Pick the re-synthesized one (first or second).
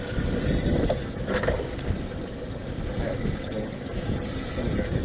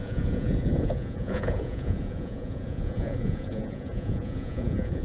second